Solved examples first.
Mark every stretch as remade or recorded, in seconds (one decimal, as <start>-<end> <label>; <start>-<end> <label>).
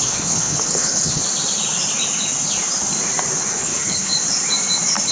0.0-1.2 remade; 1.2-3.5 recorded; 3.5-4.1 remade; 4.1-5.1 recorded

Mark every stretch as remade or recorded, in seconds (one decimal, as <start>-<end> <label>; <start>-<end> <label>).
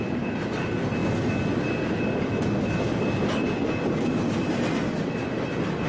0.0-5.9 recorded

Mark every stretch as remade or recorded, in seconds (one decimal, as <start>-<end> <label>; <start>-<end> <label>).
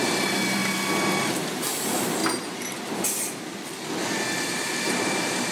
0.0-0.6 remade; 0.6-1.2 recorded; 1.2-2.2 remade; 2.2-4.4 recorded; 4.4-5.5 remade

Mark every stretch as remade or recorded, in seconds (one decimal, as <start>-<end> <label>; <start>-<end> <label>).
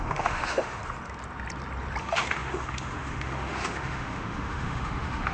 0.0-0.8 remade; 0.8-2.0 recorded; 2.0-5.3 remade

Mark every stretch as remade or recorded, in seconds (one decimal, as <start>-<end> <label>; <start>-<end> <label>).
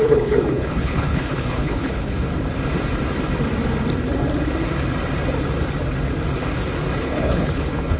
0.0-2.3 remade; 2.3-7.0 recorded; 7.0-8.0 remade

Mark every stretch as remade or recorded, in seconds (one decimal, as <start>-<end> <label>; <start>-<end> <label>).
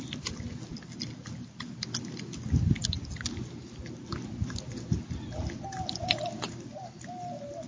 0.0-7.7 recorded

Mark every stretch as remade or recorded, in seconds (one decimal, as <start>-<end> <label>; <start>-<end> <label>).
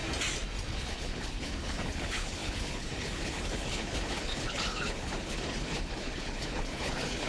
0.0-0.7 recorded; 0.7-7.3 remade